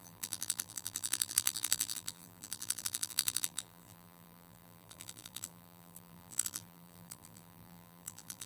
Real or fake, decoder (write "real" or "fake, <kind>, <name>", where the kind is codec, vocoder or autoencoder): fake, vocoder, BigVGAN v2